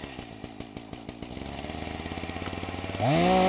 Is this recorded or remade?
recorded